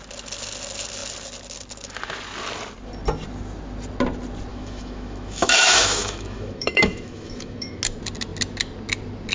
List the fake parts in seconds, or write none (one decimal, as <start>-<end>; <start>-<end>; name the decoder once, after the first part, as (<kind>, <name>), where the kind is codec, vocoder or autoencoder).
4.5-7.8 (autoencoder, DAC-VAE)